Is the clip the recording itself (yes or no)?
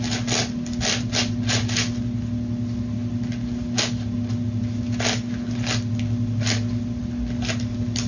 yes